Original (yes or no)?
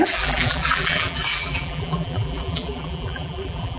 no